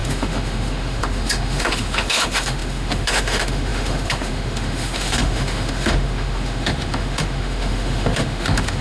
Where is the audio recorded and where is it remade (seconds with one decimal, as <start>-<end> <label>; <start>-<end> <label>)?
0.0-8.8 remade